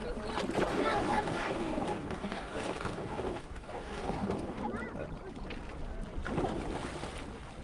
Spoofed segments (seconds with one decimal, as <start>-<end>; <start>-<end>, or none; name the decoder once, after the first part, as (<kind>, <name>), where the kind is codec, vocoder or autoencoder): 0.7-4.6 (codec, DAC)